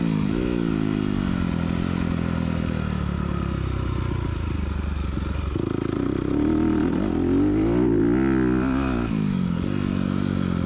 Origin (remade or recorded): recorded